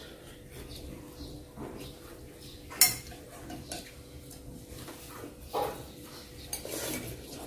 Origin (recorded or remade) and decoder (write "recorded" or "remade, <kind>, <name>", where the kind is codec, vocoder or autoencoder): recorded